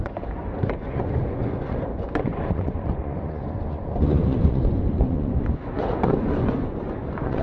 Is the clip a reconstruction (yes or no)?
yes